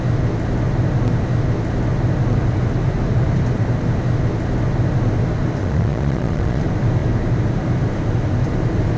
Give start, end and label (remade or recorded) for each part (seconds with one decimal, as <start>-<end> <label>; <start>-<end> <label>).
0.0-5.6 recorded; 5.6-6.6 remade; 6.6-9.0 recorded